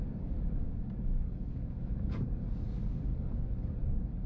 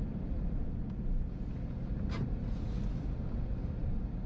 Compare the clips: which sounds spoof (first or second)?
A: first